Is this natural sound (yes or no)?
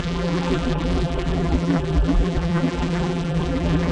no